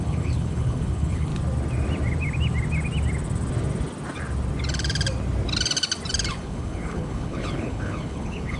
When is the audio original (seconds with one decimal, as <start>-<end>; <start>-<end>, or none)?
1.3-6.3

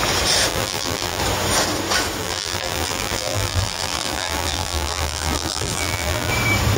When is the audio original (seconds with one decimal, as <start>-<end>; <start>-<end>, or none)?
0.0-0.5; 1.2-2.2; 6.3-6.8

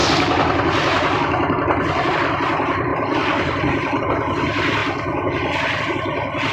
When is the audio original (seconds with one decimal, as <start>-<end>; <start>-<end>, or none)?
0.0-2.9; 4.0-6.5

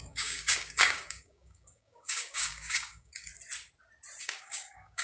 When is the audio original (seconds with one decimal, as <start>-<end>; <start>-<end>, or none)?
3.3-4.2

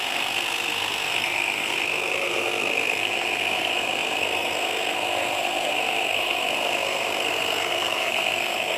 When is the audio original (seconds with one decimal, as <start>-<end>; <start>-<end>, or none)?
none